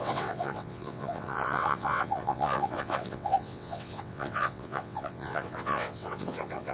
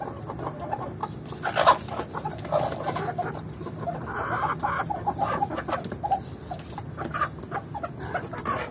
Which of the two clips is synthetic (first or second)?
first